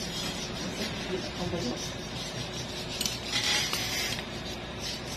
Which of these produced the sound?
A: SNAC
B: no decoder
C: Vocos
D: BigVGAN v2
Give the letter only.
D